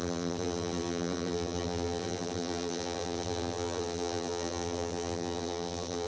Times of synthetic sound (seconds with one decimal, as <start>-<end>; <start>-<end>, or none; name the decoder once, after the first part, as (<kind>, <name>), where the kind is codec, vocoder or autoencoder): 0.0-6.1 (vocoder, BigVGAN v2)